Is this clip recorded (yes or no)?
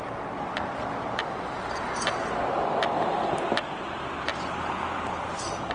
no